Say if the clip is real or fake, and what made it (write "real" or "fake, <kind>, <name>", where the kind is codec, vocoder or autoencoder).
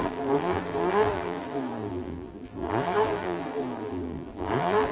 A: fake, vocoder, BigVGAN v2